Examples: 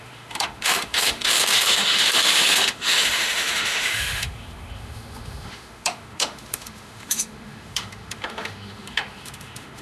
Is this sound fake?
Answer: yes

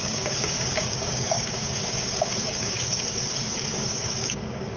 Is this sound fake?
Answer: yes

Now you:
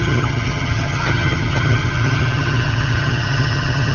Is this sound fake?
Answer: yes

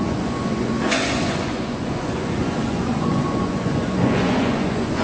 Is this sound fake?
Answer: yes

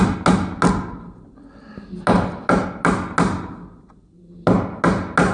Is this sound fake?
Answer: no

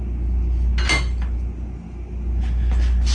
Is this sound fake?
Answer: no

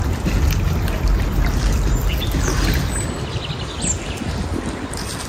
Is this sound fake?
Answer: no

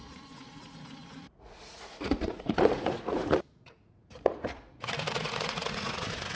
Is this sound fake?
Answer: yes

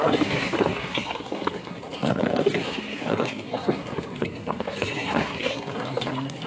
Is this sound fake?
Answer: yes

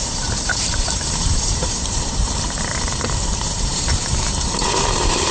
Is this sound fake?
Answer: yes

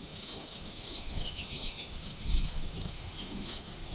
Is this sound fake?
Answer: yes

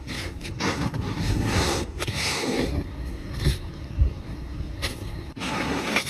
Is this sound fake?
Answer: yes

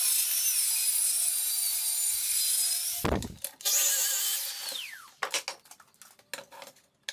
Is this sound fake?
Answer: no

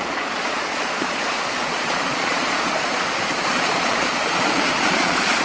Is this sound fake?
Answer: yes